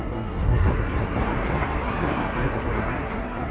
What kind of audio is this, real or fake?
fake